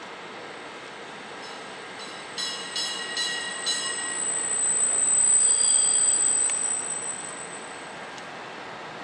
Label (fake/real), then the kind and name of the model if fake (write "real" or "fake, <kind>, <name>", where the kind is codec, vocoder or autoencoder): real